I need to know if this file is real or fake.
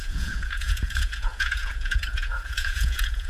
fake